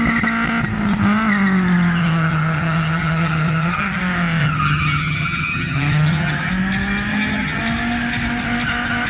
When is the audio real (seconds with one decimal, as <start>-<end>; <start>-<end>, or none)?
0.0-2.0; 4.0-4.4; 6.5-7.1; 7.6-9.1